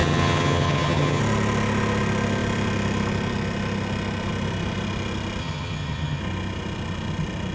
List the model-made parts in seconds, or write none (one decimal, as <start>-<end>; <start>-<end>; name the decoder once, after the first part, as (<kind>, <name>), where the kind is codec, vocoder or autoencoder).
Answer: 0.0-1.2 (vocoder, HiFi-GAN); 5.4-6.2